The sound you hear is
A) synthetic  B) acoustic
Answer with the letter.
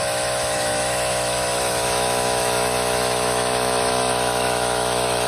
A